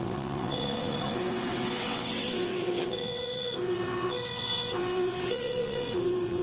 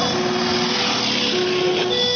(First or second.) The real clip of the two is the second